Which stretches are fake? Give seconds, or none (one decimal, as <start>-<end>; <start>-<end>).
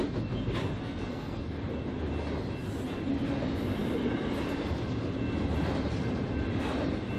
0.8-1.4